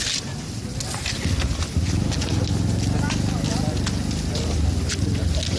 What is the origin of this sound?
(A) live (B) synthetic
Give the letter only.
A